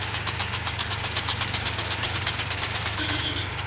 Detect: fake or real fake